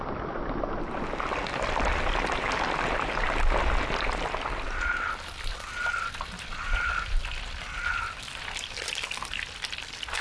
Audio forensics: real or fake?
real